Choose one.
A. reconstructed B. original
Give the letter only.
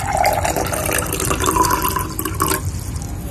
B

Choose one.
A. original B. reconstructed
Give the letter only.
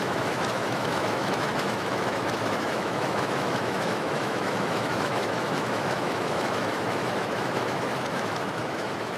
B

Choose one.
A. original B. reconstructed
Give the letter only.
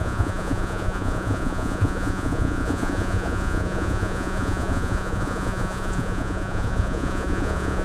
B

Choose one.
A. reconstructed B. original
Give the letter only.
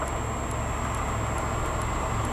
B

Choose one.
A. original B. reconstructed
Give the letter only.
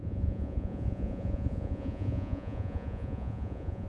B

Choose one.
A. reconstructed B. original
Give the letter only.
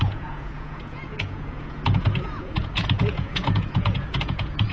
A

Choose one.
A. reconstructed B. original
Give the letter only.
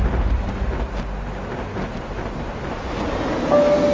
B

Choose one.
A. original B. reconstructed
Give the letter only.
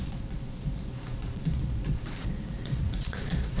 B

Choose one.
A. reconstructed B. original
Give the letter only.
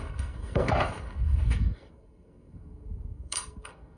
A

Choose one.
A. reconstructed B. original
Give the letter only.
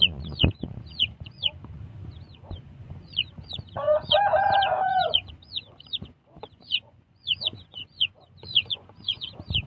A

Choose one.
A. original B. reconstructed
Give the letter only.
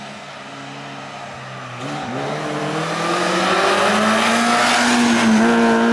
A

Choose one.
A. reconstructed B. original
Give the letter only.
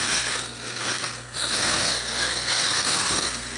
A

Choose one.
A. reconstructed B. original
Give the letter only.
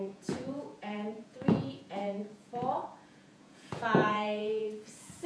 A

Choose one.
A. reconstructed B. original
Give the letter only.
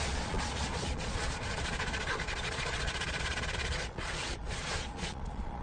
A